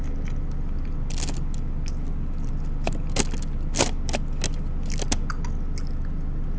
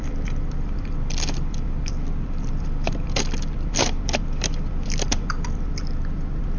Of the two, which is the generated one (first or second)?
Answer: second